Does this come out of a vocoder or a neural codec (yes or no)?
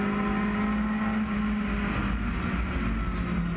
no